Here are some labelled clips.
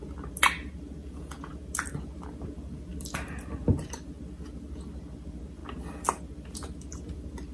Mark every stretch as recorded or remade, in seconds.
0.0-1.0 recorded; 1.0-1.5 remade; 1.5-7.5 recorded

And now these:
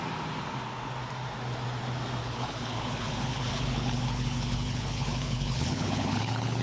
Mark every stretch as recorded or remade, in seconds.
0.0-2.2 recorded; 2.2-6.6 remade

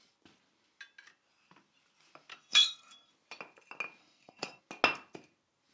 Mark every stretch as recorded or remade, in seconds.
0.0-2.3 recorded; 2.3-3.1 remade; 3.1-4.0 recorded; 4.0-4.6 remade; 4.6-5.7 recorded